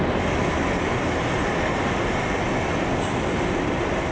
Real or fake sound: real